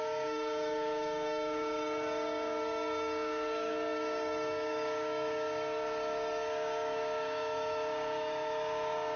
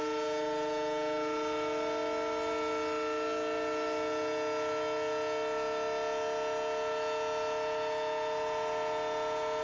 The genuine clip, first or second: second